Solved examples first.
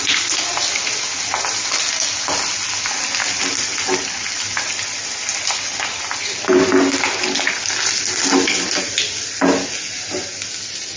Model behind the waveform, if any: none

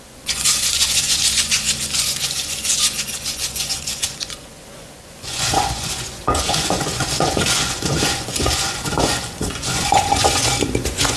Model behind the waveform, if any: vocoder, Vocos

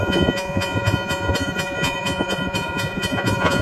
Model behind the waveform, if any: vocoder, Vocos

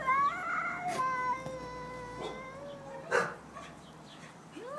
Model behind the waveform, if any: none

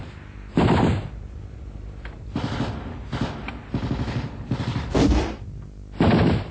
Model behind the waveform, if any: none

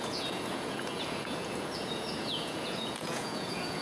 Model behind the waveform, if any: vocoder, Vocos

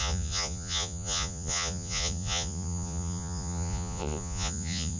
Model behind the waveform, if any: vocoder, Vocos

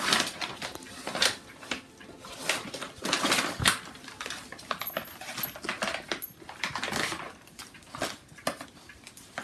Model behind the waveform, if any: none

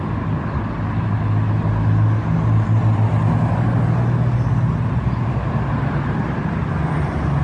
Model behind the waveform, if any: none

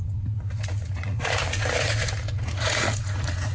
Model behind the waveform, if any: vocoder, Vocos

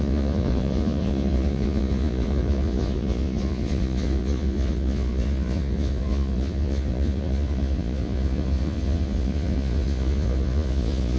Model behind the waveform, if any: vocoder, Vocos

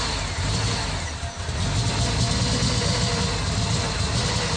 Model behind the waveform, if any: none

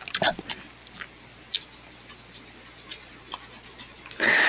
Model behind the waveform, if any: none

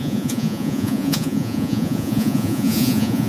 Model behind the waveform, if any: vocoder, Vocos